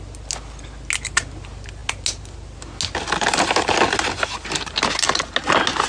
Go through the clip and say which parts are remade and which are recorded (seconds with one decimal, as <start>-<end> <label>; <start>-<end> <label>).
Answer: 0.0-5.9 recorded